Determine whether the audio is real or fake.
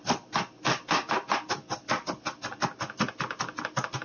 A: real